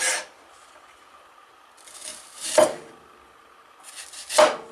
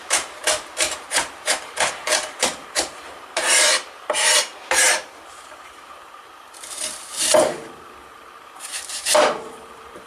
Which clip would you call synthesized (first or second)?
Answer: second